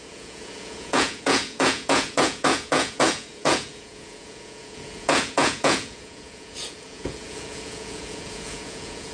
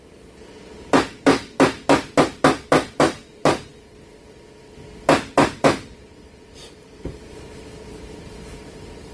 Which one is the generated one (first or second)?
first